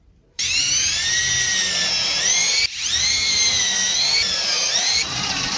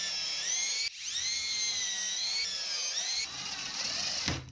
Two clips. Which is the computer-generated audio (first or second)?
first